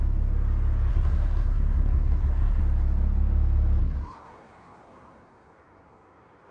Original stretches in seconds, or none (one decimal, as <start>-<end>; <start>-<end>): 0.0-0.9; 2.6-3.8